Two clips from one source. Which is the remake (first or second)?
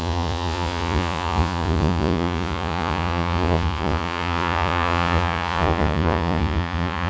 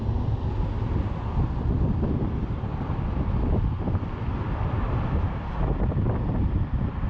first